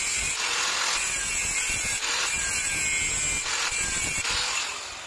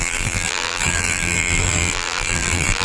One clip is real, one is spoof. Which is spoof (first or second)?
second